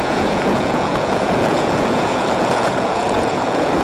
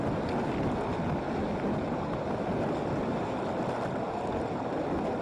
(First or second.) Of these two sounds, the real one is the second